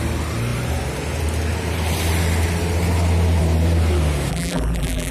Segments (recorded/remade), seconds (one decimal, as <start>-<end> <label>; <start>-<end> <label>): 0.0-4.3 recorded; 4.3-5.1 remade